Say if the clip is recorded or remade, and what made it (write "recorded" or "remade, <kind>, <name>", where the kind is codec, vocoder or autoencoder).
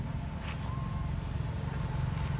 recorded